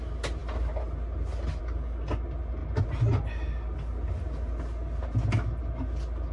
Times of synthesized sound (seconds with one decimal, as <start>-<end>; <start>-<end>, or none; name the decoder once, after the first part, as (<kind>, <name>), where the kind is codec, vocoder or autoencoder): none